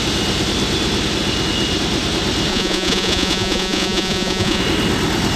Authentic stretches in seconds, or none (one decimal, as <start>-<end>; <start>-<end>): 0.0-2.5; 4.6-5.4